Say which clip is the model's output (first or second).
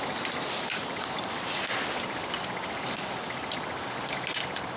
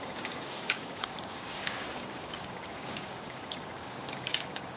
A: second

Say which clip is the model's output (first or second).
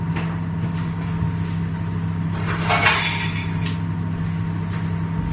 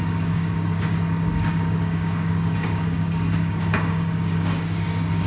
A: second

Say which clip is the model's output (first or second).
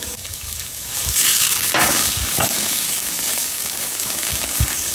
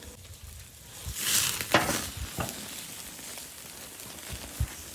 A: first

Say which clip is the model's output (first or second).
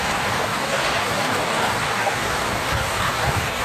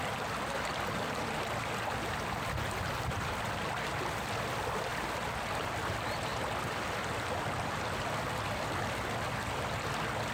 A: first